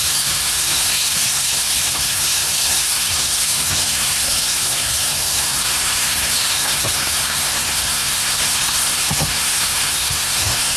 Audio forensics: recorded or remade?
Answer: remade